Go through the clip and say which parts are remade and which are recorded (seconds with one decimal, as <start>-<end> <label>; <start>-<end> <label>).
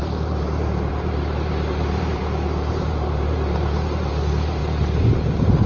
0.0-2.2 remade; 2.2-2.7 recorded; 2.7-4.6 remade; 4.6-5.7 recorded